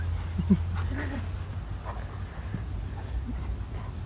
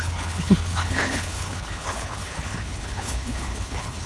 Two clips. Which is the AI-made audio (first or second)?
second